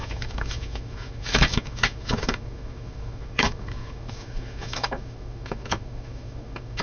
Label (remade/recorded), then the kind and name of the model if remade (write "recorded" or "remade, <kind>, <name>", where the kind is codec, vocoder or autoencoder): remade, autoencoder, DAC-VAE